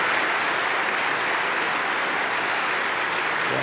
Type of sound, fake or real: real